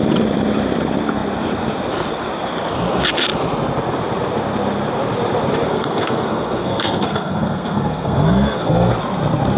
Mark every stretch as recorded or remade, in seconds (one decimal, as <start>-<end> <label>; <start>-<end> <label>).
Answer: 0.0-5.7 recorded; 5.7-8.9 remade; 8.9-9.6 recorded